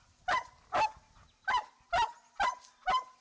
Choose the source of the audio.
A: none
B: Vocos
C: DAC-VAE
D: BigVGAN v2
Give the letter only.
A